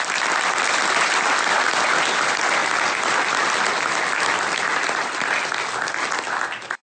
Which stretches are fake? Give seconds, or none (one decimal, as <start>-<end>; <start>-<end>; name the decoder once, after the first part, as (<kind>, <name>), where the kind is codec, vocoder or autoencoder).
none